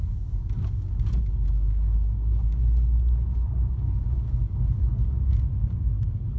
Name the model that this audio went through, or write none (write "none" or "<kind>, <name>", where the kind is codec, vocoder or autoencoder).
codec, DAC